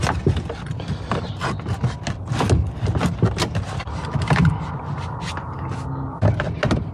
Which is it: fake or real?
real